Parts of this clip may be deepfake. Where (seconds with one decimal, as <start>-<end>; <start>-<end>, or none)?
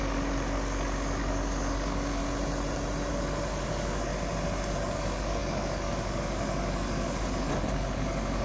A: 0.0-2.2; 3.1-4.1; 4.7-8.4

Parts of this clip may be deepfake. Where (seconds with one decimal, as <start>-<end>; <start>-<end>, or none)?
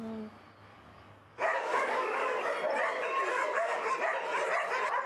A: 0.7-2.4; 3.3-3.9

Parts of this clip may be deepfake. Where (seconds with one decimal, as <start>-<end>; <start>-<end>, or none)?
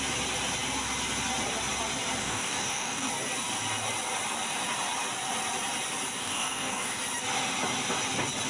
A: 2.2-3.1; 6.2-7.0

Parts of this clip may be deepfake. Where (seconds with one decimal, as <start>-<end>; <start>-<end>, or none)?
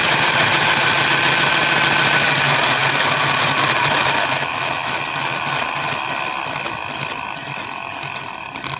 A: none